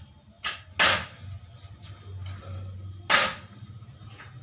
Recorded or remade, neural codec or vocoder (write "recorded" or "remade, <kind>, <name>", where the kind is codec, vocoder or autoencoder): recorded